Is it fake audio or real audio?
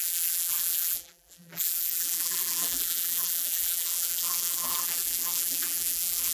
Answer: fake